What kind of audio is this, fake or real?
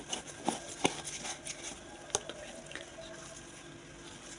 real